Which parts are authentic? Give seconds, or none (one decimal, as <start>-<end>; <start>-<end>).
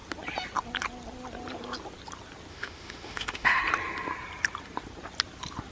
0.0-2.5; 3.6-5.7